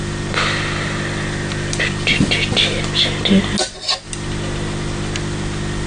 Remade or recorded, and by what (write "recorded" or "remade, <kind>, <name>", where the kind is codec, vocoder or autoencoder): recorded